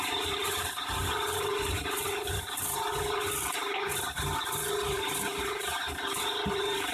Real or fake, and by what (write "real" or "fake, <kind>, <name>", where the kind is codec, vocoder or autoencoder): fake, vocoder, BigVGAN v2